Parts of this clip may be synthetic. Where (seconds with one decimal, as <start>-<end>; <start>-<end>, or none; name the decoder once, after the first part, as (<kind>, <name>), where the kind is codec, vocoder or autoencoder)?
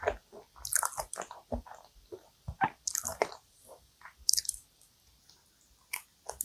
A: 3.1-4.4 (vocoder, BigVGAN v2)